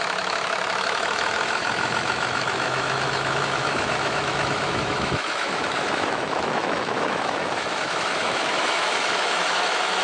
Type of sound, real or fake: fake